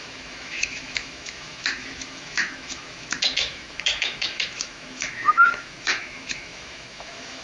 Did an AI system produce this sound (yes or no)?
yes